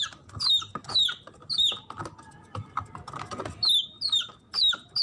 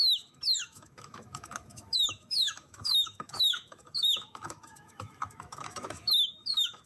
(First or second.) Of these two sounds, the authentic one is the first